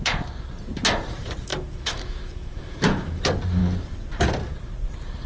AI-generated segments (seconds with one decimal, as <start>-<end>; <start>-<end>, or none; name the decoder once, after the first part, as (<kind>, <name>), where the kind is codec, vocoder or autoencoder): 1.5-3.2 (autoencoder, DAC-VAE)

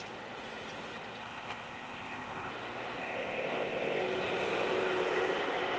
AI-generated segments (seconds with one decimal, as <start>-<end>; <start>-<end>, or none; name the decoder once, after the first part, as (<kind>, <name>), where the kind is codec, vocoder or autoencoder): 1.2-2.5 (codec, ZipCodec); 3.0-4.0

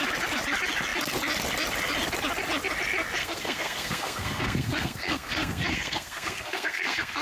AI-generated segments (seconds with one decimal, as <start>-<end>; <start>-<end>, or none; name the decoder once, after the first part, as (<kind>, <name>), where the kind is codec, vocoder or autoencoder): 3.2-7.2 (codec, SNAC)

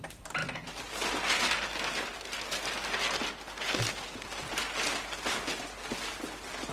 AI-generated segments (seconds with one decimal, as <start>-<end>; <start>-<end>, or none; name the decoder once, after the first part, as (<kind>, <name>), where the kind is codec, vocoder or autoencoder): none

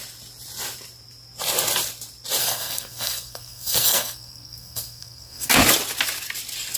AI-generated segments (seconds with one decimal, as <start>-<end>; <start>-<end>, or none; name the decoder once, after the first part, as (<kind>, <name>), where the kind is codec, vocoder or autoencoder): 2.4-5.5 (codec, SNAC)

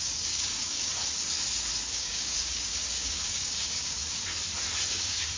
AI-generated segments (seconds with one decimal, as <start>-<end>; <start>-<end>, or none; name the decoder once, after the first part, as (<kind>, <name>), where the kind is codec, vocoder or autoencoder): 0.0-0.9 (codec, DAC); 1.9-4.0; 4.9-5.4